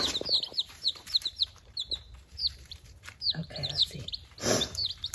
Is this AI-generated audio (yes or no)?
yes